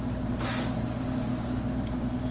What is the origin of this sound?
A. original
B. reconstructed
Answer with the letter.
A